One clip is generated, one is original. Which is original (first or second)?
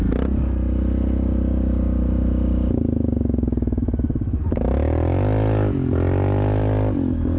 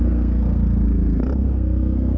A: first